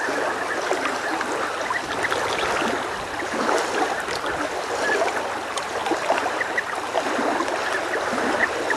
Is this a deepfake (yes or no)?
no